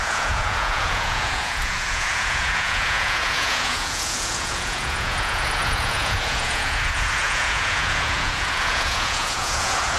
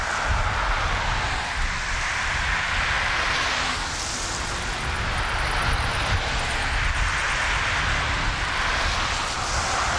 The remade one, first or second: first